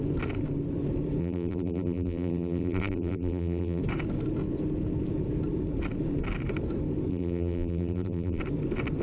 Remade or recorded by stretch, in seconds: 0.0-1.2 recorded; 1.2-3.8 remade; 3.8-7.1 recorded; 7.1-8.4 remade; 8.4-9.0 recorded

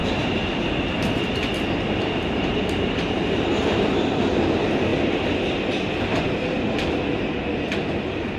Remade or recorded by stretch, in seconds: 0.0-1.2 remade; 1.2-2.6 recorded; 2.6-3.6 remade; 3.6-8.4 recorded

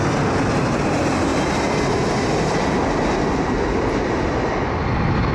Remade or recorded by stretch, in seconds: 0.0-5.3 recorded

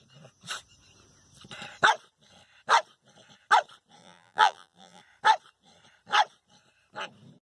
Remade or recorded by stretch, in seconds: 0.0-4.0 recorded; 4.0-5.0 remade; 5.0-7.5 recorded

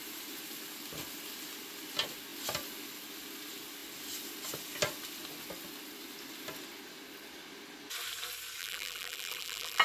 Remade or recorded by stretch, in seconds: 0.0-8.6 recorded; 8.6-9.8 remade

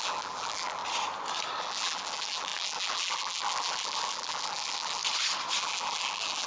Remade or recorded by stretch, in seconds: 0.0-0.8 remade; 0.8-1.6 recorded; 1.6-5.0 remade; 5.0-5.6 recorded; 5.6-6.5 remade

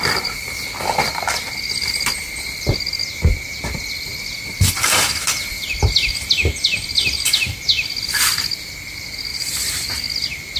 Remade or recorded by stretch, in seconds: 0.0-9.3 recorded; 9.3-9.9 remade; 9.9-10.6 recorded